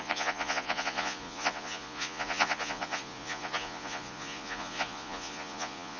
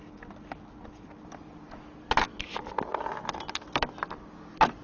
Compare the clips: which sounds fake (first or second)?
first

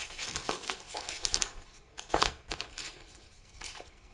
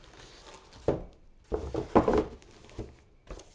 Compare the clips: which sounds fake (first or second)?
first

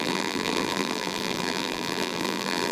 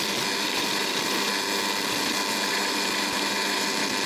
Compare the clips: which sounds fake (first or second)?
first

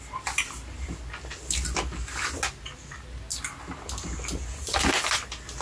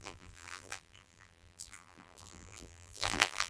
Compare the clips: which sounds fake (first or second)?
second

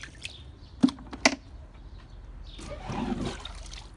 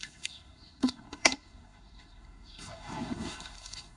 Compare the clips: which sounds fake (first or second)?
second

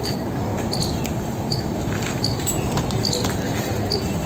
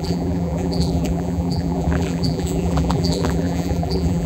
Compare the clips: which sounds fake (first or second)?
second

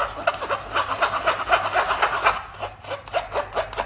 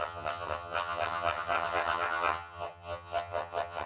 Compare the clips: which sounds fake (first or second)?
second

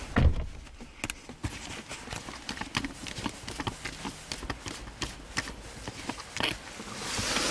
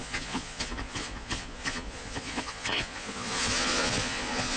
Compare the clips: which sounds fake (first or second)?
second